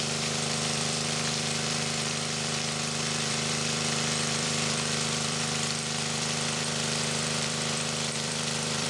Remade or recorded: remade